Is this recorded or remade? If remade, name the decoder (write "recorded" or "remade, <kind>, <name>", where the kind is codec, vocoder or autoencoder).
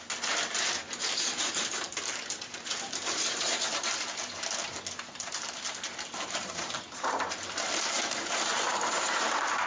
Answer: remade, vocoder, BigVGAN v2